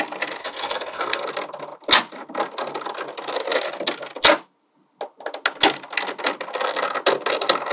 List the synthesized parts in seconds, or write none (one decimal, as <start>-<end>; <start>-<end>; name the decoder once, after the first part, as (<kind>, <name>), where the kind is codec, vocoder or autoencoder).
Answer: 0.4-1.2 (codec, SNAC)